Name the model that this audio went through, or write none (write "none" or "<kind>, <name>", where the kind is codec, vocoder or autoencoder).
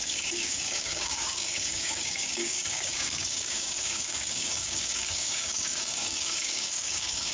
codec, DAC